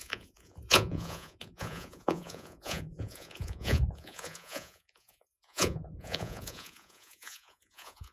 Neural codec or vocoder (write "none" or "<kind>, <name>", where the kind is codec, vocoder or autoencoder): vocoder, Vocos